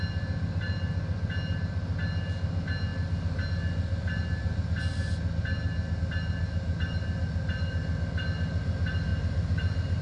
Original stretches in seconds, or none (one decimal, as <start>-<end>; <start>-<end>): 0.0-10.0